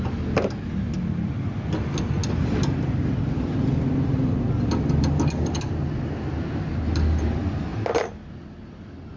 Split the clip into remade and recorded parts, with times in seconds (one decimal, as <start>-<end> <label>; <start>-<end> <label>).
0.0-9.2 recorded